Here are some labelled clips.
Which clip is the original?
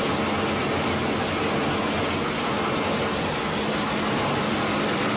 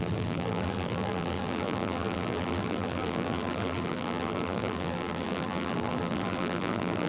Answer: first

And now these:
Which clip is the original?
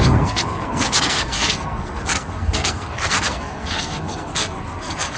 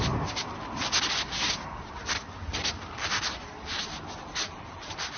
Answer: second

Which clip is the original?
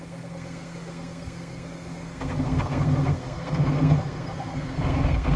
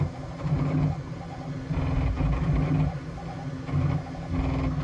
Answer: second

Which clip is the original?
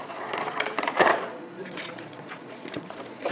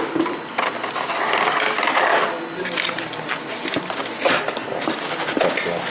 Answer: second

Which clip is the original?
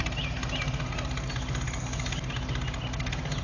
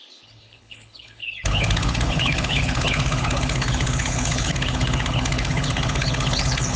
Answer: first